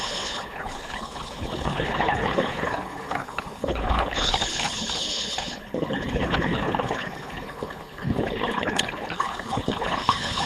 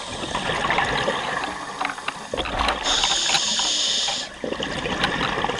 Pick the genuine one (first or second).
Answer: second